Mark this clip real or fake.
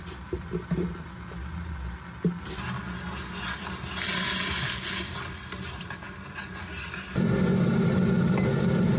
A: real